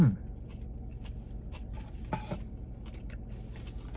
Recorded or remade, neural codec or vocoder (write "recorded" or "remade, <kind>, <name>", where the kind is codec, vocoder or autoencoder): recorded